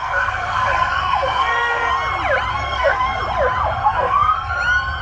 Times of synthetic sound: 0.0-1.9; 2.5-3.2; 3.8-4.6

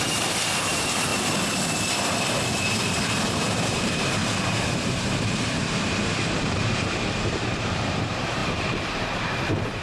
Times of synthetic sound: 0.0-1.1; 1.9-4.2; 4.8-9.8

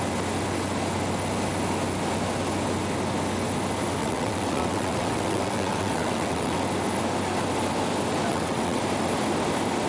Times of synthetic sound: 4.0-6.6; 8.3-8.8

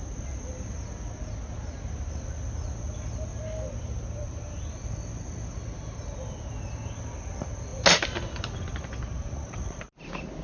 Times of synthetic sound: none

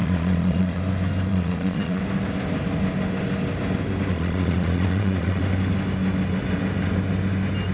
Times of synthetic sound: 0.0-0.8; 1.3-2.0; 4.1-5.4

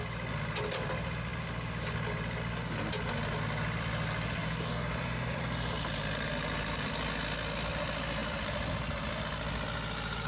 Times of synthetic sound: 4.4-6.1